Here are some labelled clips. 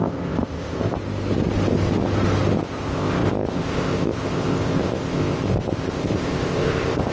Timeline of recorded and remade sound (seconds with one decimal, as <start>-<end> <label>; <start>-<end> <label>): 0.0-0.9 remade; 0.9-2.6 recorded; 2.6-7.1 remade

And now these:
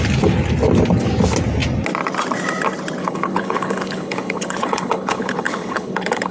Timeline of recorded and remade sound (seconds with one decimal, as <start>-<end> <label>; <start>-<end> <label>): 0.0-3.0 recorded; 3.0-6.3 remade

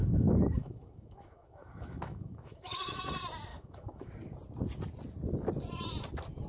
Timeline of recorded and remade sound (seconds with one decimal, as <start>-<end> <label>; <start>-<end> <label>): 0.0-3.1 remade; 3.1-3.5 recorded; 3.5-4.1 remade; 4.1-6.5 recorded

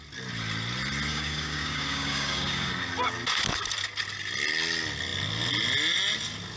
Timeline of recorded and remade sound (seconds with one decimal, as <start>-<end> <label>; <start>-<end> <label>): 0.0-1.1 recorded; 1.1-2.7 remade; 2.7-6.6 recorded

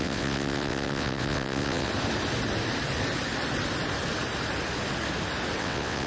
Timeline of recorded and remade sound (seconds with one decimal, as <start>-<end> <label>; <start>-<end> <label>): 0.0-1.9 remade; 1.9-5.6 recorded; 5.6-6.1 remade

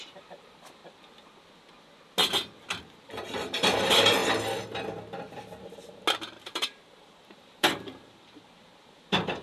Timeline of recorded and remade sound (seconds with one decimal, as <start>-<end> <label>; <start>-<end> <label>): 0.0-0.8 remade; 0.8-2.8 recorded; 2.8-4.2 remade; 4.2-6.4 recorded; 6.4-9.4 remade